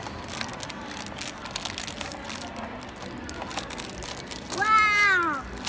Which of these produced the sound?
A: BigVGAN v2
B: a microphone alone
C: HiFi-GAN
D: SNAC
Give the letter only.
B